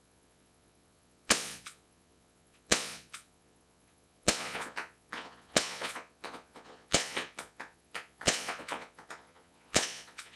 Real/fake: fake